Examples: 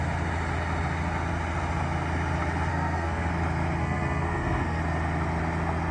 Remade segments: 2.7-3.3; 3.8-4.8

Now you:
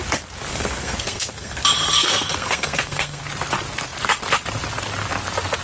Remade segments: 0.5-1.6; 2.0-3.2

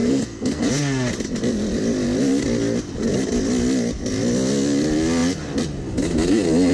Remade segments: 0.0-0.7

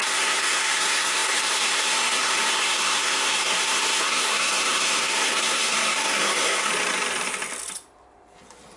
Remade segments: 0.0-6.7

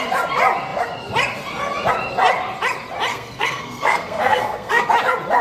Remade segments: 3.1-4.9